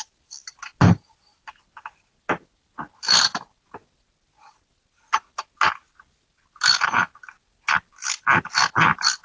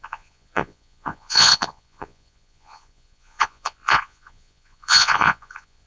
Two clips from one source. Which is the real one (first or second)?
first